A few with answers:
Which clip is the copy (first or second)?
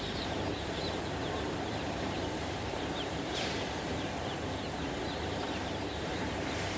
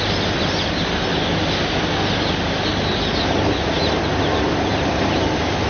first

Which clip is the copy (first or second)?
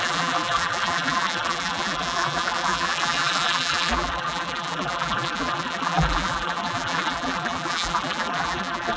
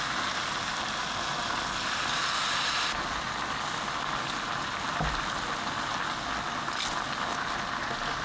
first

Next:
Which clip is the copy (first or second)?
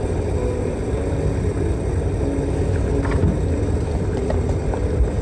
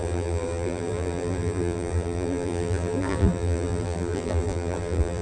second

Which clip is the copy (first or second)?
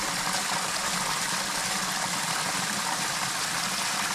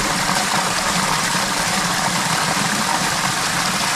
second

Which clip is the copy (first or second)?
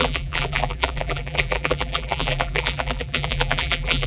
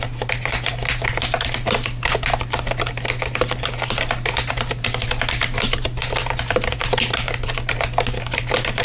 first